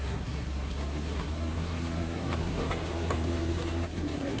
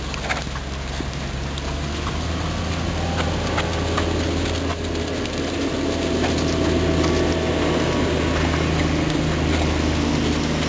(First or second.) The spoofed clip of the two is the first